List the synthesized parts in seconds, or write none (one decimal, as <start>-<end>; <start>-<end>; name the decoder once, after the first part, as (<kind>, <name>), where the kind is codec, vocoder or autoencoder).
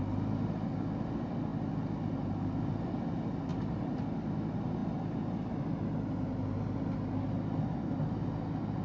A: none